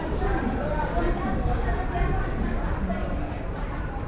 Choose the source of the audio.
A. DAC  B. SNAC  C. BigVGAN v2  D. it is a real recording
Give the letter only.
C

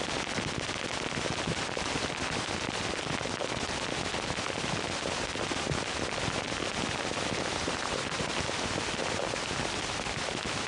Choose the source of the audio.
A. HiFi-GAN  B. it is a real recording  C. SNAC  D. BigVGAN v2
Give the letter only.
B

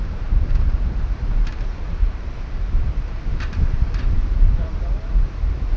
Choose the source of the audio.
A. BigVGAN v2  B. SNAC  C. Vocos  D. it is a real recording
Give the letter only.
A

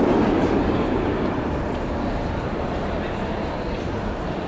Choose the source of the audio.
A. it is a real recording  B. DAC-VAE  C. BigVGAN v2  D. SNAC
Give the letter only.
C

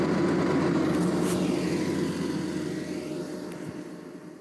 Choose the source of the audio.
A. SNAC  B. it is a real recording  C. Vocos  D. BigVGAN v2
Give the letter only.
D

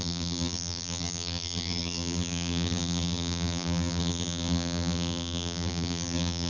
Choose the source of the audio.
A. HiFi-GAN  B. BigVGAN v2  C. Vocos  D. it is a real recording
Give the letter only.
B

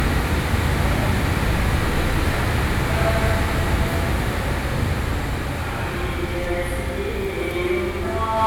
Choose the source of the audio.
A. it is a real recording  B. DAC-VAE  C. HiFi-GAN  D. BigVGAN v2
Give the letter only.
A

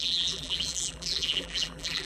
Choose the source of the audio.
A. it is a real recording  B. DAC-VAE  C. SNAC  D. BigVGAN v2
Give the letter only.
D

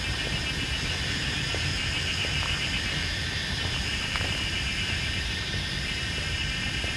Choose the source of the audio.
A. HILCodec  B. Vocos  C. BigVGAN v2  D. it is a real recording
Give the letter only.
C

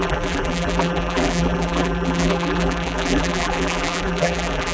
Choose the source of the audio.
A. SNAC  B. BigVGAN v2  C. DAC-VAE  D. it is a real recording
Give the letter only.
B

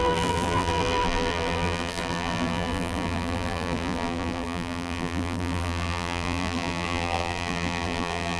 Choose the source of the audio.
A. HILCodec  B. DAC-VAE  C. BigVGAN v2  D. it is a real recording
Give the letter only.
C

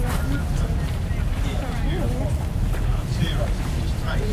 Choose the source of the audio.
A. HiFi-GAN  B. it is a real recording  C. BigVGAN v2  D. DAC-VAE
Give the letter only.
C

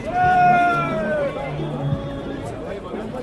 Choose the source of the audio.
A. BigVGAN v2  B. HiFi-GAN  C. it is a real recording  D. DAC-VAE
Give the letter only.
A